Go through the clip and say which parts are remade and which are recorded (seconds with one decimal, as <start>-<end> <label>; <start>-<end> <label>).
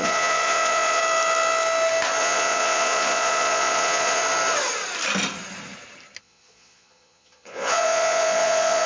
0.0-1.0 remade; 1.0-2.2 recorded; 2.2-4.2 remade; 4.2-6.2 recorded; 6.2-8.9 remade